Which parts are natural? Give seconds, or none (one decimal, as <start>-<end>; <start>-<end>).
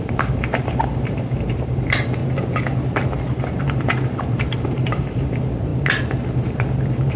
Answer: 2.2-3.2